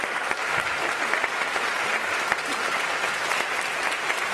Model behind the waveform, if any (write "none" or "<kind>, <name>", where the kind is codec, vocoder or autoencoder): none